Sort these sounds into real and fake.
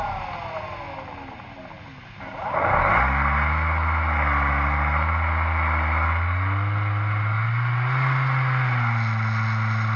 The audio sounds real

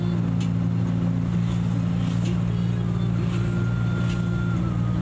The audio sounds real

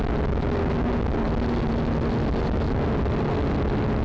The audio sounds real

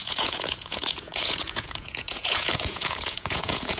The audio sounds fake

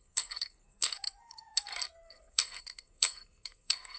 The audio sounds fake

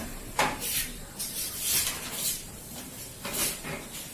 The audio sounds fake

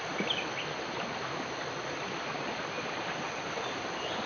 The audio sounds real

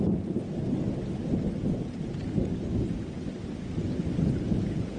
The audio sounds real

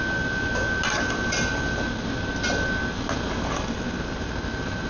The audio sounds real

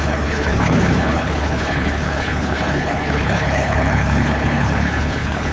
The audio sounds fake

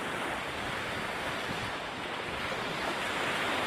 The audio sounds fake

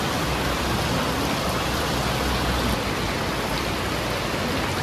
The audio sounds real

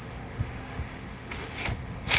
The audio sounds fake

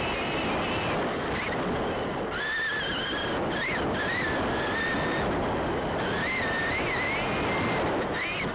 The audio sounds real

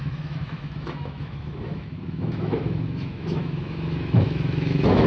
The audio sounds fake